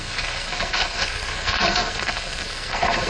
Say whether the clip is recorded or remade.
remade